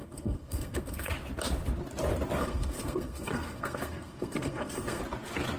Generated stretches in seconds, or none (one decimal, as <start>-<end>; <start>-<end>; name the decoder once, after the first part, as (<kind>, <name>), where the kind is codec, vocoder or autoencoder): 0.0-1.1 (codec, SNAC); 2.4-5.0